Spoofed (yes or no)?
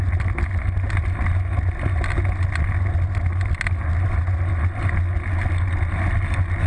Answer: no